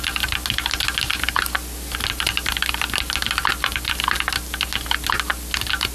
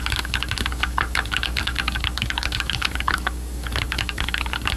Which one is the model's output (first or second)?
second